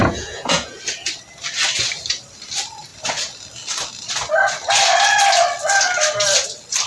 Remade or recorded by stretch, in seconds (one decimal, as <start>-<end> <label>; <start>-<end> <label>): 0.0-0.8 remade; 0.8-6.9 recorded